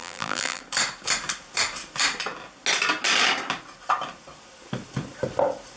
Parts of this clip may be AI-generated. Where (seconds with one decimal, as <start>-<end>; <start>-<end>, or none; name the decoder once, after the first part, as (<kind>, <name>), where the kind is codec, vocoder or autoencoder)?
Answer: 0.0-0.6 (vocoder, BigVGAN v2)